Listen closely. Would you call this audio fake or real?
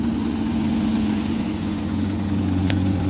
fake